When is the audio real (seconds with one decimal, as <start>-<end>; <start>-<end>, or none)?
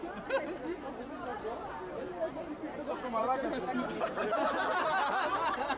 0.0-1.3; 3.2-5.8